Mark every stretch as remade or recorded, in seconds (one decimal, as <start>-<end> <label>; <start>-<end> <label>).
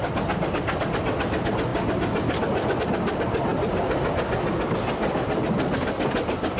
0.0-6.6 recorded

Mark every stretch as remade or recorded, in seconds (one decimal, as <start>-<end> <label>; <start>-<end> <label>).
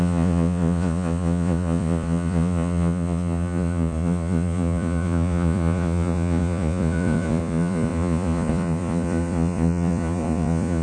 0.0-10.8 remade